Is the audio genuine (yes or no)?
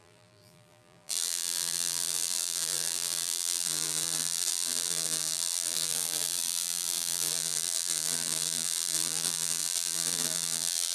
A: no